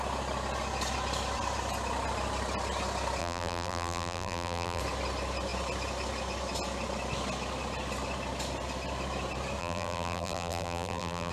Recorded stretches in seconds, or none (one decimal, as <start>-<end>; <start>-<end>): 0.0-3.2; 4.8-9.6